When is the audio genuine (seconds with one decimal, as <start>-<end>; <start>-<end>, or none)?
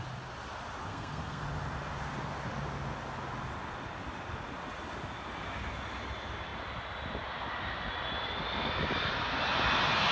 0.0-0.9; 1.4-10.1